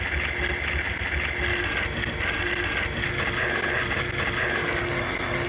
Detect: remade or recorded recorded